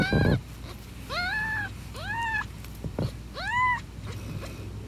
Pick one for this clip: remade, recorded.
recorded